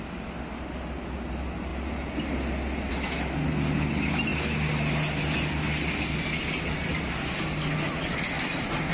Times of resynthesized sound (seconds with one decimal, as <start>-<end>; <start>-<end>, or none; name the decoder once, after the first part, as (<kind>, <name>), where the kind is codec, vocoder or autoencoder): none